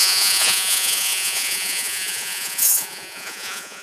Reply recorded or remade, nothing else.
remade